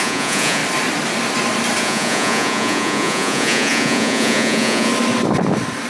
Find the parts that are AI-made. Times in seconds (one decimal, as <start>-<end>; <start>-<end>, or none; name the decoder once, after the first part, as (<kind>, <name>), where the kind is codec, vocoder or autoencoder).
0.0-0.6 (vocoder, Vocos); 1.8-4.9